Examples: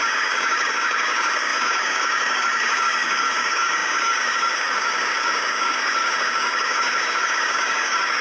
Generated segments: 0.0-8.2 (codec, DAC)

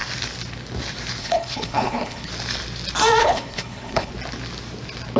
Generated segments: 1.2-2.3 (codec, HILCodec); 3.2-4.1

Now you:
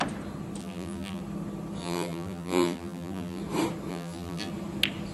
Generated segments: 0.6-1.2 (vocoder, BigVGAN v2); 1.8-3.4; 3.9-4.5

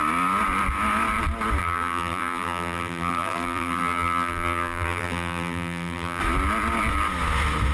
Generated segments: 1.6-6.2 (vocoder, BigVGAN v2)

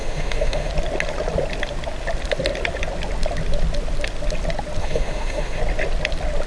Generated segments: 0.0-0.7 (autoencoder, DAC-VAE); 4.8-5.6

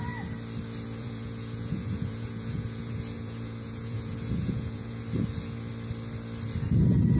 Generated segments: 1.0-5.0 (vocoder, Vocos)

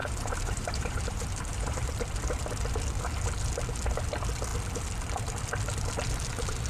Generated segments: 0.0-1.9 (vocoder, BigVGAN v2)

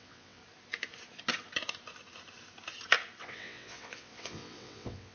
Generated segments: 0.0-0.4 (vocoder, WaveNeXt); 3.2-5.1